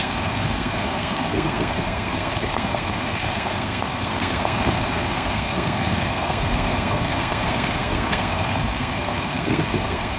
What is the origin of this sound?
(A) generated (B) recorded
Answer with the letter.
A